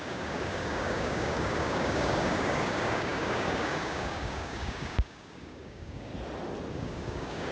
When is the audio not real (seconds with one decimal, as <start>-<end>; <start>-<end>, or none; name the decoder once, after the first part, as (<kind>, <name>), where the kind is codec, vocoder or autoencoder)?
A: 0.0-6.1 (codec, DAC); 6.7-7.5